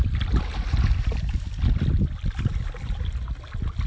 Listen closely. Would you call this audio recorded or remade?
recorded